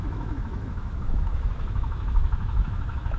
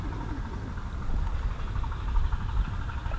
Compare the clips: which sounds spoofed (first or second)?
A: first